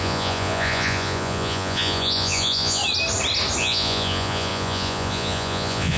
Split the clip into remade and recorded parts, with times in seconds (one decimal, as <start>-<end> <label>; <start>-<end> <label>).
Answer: 0.0-2.8 remade; 2.8-3.6 recorded; 3.6-6.0 remade